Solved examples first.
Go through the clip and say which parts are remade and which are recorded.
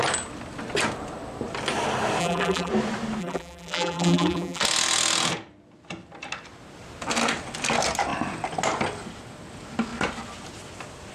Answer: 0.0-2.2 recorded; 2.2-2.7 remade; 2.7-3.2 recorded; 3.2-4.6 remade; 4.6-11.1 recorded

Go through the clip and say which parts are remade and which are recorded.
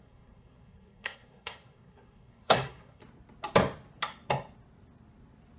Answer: 0.0-3.0 remade; 3.0-5.6 recorded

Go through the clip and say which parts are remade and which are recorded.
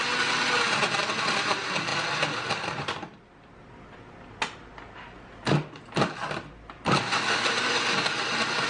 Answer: 0.0-8.7 recorded